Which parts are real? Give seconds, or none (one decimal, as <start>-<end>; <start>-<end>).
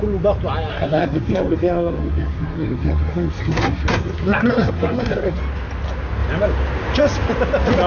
0.0-0.7; 5.4-7.9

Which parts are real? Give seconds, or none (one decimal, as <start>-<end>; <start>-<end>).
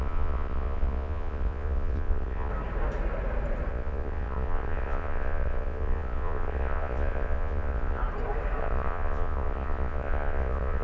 2.5-3.7; 8.0-8.6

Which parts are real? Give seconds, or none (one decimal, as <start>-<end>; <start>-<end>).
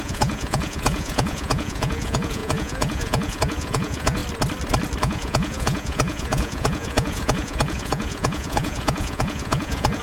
4.2-5.0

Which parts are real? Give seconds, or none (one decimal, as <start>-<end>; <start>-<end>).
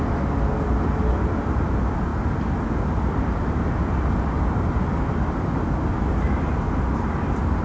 0.0-7.6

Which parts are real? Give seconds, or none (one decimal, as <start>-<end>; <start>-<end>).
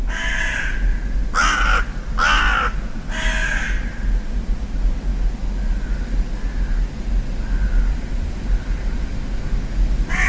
0.0-10.3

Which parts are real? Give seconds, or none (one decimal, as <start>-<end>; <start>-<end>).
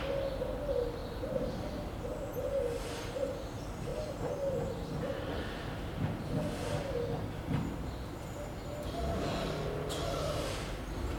0.0-1.0; 1.7-11.2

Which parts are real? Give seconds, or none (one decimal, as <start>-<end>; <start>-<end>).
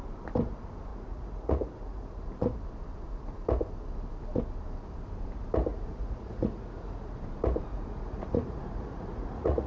0.0-0.9; 2.5-5.7; 7.2-7.7